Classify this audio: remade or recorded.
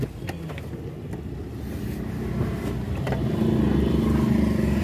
recorded